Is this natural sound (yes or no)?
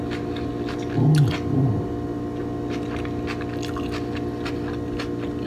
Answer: yes